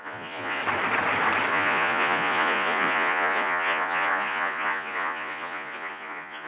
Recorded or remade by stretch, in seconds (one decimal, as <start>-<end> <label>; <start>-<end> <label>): 0.0-0.6 remade; 0.6-1.5 recorded; 1.5-6.5 remade